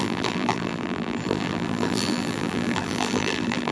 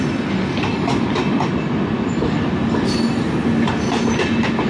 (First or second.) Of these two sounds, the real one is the second